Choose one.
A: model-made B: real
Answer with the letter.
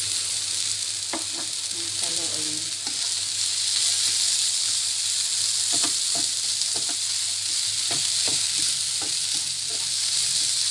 B